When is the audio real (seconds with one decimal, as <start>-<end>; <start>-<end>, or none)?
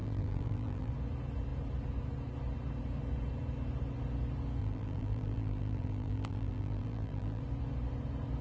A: 0.9-4.6; 7.4-8.4